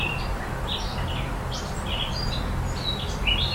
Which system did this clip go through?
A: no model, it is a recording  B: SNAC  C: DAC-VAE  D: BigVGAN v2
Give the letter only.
A